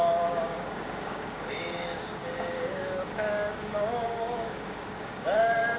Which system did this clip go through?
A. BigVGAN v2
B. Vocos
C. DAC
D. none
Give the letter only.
C